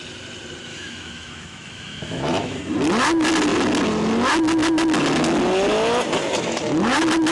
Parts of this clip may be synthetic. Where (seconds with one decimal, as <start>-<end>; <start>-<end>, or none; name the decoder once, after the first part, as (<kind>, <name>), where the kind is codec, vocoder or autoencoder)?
0.7-2.6 (autoencoder, DAC-VAE)